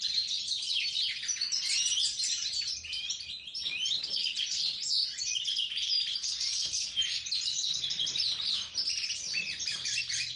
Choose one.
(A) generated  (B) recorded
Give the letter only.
A